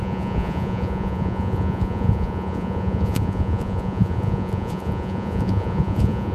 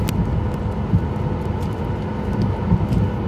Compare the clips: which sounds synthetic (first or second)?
first